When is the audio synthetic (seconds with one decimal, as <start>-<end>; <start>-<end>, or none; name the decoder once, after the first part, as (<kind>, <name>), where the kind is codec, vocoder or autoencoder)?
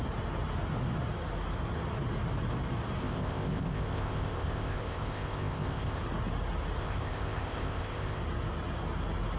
3.0-6.0 (codec, ZipCodec); 6.8-8.2